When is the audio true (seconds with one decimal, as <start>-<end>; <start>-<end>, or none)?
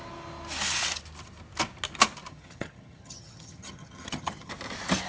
0.0-2.3; 4.5-5.1